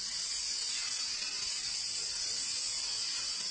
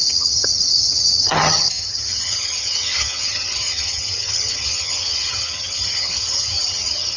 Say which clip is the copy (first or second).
second